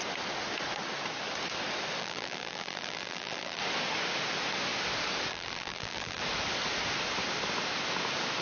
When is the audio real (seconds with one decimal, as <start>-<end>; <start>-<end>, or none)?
0.0-2.0; 3.6-5.3; 6.2-8.4